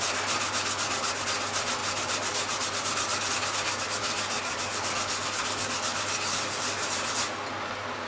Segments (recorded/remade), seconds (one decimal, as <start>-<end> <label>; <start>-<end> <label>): 0.0-4.0 recorded; 4.0-6.3 remade; 6.3-8.1 recorded